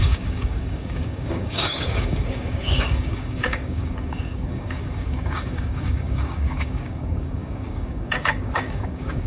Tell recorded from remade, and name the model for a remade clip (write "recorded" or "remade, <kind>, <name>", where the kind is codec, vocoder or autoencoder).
remade, codec, DAC